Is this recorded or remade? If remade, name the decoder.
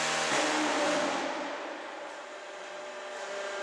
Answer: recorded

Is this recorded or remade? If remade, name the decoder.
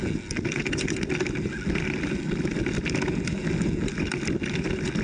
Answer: recorded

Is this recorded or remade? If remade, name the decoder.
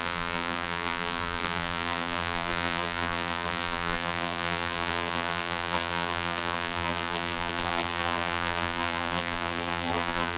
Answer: remade, vocoder, BigVGAN v2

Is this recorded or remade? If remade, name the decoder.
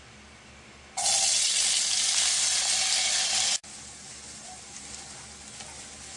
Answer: recorded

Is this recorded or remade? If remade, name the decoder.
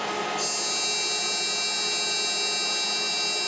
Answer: recorded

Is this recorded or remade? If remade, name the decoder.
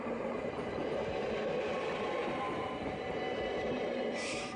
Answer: remade, vocoder, BigVGAN v2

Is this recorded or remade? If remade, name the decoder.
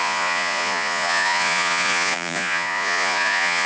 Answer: remade, vocoder, Vocos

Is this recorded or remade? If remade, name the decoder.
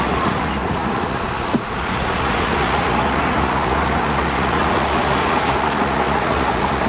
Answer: remade, vocoder, Vocos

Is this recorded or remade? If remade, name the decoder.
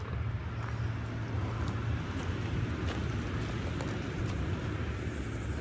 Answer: recorded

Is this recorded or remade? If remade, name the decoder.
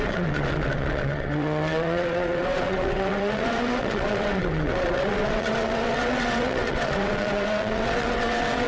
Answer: remade, vocoder, WaveNeXt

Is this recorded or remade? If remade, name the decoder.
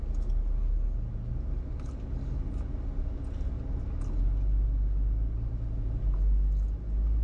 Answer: recorded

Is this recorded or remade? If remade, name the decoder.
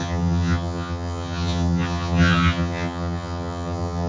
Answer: remade, vocoder, HiFi-GAN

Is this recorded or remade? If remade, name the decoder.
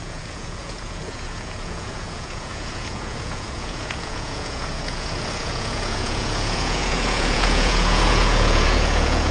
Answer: remade, vocoder, Vocos